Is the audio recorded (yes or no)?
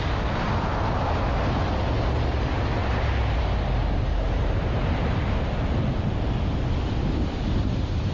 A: yes